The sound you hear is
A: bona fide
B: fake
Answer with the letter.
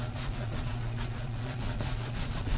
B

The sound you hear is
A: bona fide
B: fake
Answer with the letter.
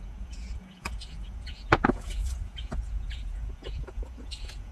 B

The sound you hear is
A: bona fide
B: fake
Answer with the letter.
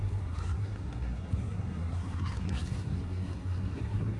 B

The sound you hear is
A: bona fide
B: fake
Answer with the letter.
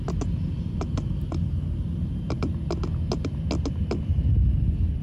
A